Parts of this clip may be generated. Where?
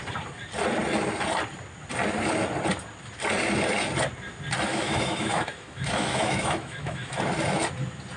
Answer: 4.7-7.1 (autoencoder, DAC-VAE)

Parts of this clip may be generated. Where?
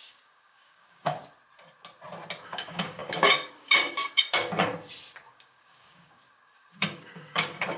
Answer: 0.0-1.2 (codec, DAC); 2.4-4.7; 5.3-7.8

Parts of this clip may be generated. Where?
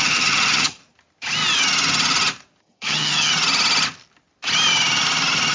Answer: 0.0-0.8 (vocoder, HiFi-GAN); 2.6-3.3